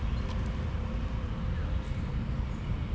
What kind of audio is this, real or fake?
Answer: real